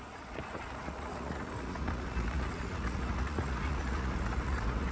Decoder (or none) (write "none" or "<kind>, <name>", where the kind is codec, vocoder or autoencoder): vocoder, Vocos